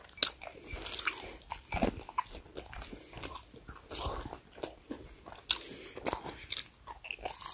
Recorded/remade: recorded